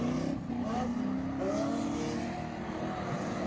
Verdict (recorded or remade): recorded